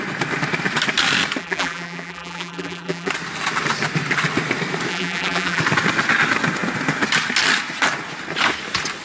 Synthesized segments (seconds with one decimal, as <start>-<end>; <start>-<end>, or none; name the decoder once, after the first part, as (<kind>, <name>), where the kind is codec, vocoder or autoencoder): 1.4-3.1 (vocoder, BigVGAN v2); 4.9-5.6